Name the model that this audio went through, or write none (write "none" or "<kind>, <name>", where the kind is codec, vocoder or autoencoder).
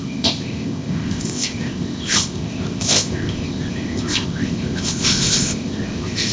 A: codec, ZipCodec